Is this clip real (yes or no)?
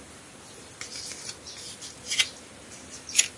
yes